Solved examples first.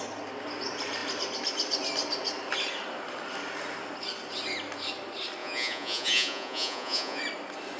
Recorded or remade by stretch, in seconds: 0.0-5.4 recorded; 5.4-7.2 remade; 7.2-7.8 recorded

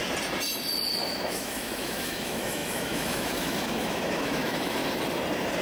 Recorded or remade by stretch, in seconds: 0.0-1.0 recorded; 1.0-4.8 remade; 4.8-5.6 recorded

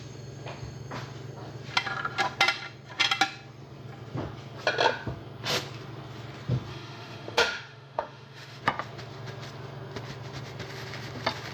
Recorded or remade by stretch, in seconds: 0.0-6.7 recorded; 6.7-8.6 remade; 8.6-11.5 recorded

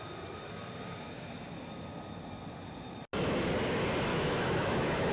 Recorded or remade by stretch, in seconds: 0.0-4.1 recorded; 4.1-5.1 remade

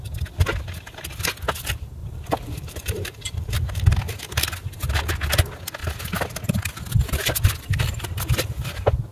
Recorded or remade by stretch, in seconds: 0.0-2.0 recorded; 2.0-3.8 remade; 3.8-9.1 recorded

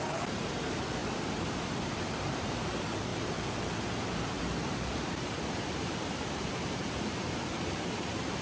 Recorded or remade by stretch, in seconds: 0.0-1.0 remade; 1.0-1.8 recorded; 1.8-8.4 remade